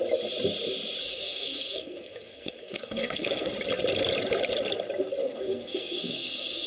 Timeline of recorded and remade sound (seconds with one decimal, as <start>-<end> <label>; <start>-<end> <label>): 0.0-1.0 recorded; 1.0-3.5 remade; 3.5-5.2 recorded; 5.2-6.7 remade